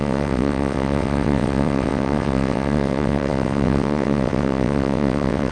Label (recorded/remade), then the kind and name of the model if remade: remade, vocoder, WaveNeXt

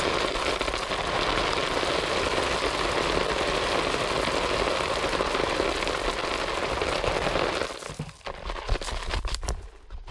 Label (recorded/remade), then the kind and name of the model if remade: recorded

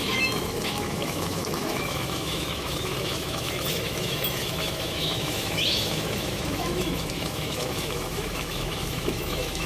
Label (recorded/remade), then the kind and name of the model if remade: remade, autoencoder, DAC-VAE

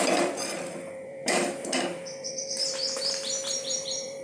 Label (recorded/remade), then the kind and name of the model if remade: remade, vocoder, BigVGAN v2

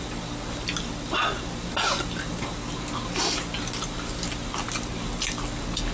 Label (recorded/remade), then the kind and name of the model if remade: recorded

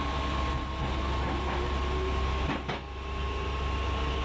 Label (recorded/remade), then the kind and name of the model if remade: recorded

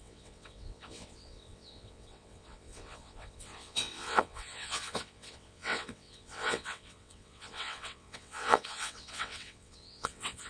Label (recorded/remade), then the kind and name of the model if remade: remade, vocoder, WaveNeXt